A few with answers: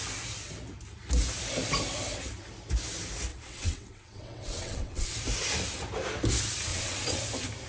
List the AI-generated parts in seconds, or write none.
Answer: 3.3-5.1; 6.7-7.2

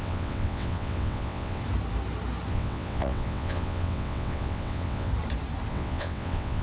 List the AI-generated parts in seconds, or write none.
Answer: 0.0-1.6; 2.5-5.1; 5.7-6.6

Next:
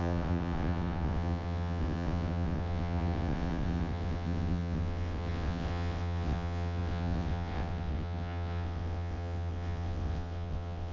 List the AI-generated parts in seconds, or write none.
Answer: 0.0-10.9